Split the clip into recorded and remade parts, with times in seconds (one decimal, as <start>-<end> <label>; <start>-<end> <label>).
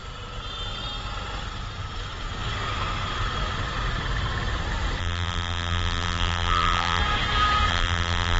0.0-5.0 recorded; 5.0-7.0 remade; 7.0-7.7 recorded; 7.7-8.4 remade